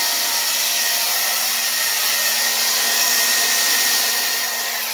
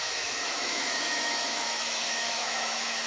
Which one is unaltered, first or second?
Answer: first